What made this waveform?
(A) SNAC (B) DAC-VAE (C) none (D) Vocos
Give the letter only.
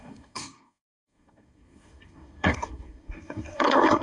A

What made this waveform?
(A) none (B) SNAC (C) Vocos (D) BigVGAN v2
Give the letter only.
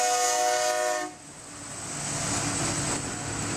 A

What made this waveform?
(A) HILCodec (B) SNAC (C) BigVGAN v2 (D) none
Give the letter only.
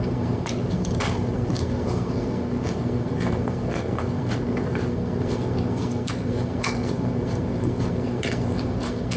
B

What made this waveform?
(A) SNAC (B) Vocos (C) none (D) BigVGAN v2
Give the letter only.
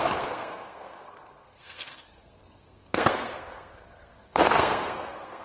A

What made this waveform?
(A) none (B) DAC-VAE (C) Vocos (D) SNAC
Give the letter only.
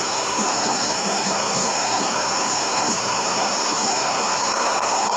D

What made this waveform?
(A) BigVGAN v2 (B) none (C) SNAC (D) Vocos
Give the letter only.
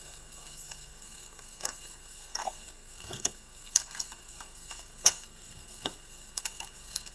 C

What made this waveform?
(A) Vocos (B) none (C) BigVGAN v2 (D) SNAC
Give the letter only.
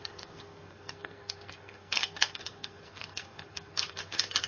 D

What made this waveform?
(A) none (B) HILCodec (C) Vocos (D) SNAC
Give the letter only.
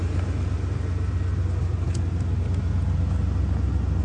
A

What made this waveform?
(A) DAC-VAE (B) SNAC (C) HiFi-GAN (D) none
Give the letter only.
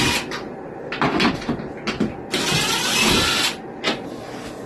D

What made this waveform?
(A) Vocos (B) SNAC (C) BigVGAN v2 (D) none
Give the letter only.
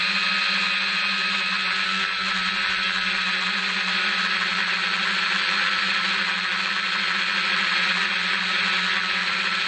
D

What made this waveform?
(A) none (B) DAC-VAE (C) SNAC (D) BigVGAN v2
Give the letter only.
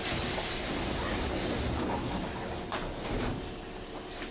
A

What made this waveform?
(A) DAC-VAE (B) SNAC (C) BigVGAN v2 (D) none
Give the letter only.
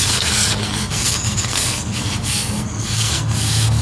B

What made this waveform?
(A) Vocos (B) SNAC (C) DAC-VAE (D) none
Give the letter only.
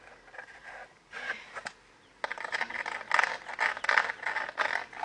D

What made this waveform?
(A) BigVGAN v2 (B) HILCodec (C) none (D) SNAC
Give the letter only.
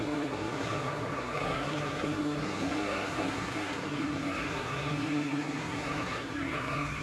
D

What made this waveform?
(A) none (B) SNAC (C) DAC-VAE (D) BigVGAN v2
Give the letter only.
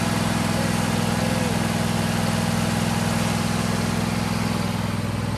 A